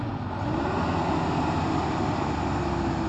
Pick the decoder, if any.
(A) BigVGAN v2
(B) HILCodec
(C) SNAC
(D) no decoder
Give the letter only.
D